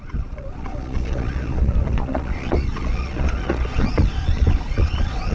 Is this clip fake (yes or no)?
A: yes